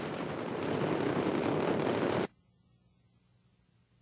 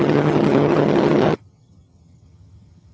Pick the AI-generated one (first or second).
second